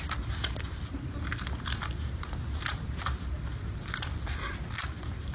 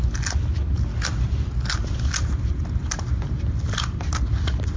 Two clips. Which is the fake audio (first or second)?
first